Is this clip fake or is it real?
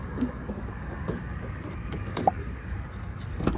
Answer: fake